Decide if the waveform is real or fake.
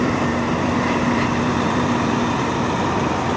fake